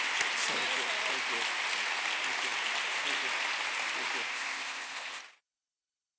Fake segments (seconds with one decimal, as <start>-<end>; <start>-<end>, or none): 4.3-5.2